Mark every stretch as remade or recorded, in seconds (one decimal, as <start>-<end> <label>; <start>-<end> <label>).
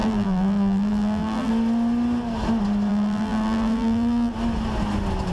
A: 0.0-1.5 remade; 1.5-2.9 recorded; 2.9-4.3 remade; 4.3-5.3 recorded